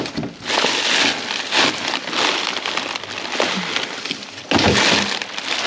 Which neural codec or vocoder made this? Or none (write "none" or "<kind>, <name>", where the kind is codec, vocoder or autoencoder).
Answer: none